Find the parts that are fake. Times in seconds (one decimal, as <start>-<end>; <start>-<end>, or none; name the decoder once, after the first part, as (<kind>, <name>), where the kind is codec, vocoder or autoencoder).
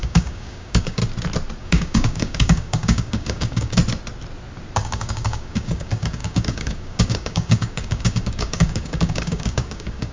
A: 0.0-1.0 (codec, DAC); 1.6-3.8; 4.8-10.1